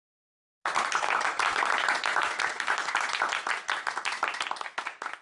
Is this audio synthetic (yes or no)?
no